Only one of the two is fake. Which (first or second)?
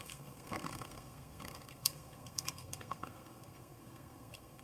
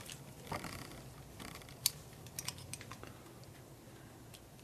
first